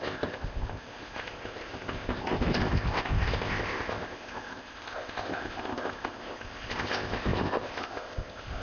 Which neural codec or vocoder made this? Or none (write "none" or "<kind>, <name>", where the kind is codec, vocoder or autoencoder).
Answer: codec, ZipCodec